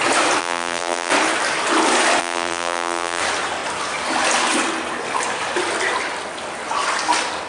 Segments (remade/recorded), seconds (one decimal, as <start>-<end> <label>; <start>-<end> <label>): 0.0-0.4 recorded; 0.4-1.1 remade; 1.1-2.2 recorded; 2.2-3.2 remade; 3.2-7.5 recorded